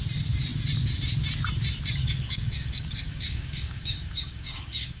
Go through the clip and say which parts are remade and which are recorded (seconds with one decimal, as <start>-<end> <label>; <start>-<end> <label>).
0.0-2.0 recorded; 2.0-5.0 remade